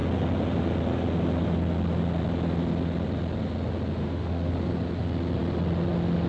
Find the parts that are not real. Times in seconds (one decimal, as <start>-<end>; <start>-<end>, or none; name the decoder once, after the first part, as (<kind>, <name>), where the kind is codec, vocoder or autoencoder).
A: 4.0-4.5 (autoencoder, DAC-VAE)